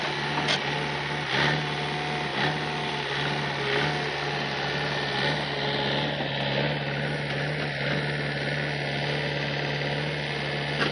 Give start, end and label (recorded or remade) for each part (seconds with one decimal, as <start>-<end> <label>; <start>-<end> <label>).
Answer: 0.0-10.9 recorded